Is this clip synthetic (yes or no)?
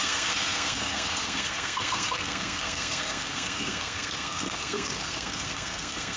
yes